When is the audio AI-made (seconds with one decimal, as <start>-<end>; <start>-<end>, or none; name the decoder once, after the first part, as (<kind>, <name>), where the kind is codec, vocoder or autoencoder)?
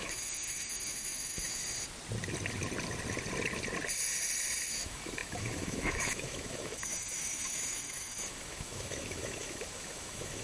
0.0-1.6 (autoencoder, DAC-VAE); 4.7-10.4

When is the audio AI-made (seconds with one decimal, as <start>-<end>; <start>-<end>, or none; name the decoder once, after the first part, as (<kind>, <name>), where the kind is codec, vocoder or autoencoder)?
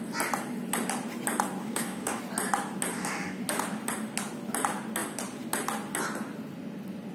1.6-2.2 (codec, DAC); 2.9-3.4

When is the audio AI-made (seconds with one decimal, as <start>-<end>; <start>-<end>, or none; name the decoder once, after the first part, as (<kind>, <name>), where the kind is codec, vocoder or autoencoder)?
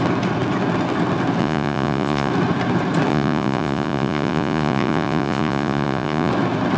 1.4-2.3 (vocoder, Vocos); 3.1-6.3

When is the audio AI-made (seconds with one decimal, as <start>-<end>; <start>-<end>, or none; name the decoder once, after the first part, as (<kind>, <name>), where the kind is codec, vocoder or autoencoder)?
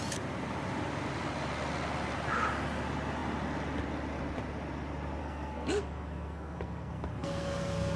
5.2-8.0 (codec, SNAC)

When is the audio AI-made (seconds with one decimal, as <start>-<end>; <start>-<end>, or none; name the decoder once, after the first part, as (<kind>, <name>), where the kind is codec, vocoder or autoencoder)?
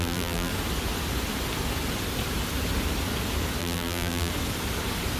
0.0-0.5 (vocoder, BigVGAN v2); 3.6-4.3